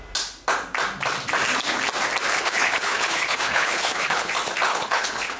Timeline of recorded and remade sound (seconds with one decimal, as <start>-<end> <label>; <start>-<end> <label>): 0.0-2.3 recorded; 2.3-4.3 remade; 4.3-4.7 recorded; 4.7-5.4 remade